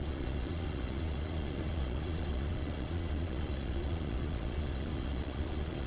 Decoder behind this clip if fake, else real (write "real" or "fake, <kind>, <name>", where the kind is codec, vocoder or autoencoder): fake, vocoder, Vocos